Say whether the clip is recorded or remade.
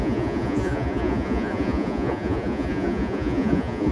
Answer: remade